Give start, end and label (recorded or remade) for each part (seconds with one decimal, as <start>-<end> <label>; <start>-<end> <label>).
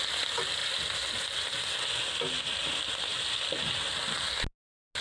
0.0-5.0 recorded